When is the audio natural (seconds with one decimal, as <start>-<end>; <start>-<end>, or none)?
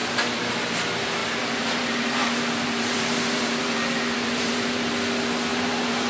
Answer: 0.0-1.2; 4.9-5.5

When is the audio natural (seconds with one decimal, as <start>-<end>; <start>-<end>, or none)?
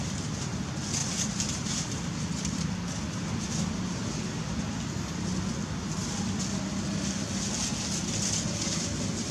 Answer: 0.0-1.0; 2.7-9.3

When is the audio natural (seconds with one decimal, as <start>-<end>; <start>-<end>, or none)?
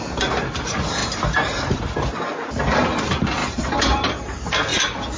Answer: 0.0-1.0; 1.8-3.4; 4.1-5.2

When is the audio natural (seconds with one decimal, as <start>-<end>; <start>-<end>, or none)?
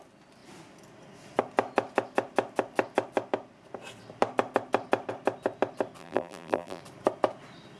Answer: 0.0-6.0; 6.8-7.8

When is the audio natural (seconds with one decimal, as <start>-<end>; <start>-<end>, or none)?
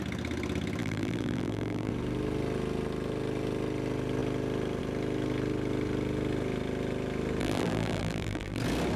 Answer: 0.0-0.8; 1.9-7.4; 8.6-9.0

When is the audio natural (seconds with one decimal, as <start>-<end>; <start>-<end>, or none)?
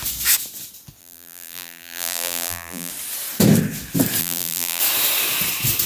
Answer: 0.0-1.0; 2.9-4.2; 4.8-5.9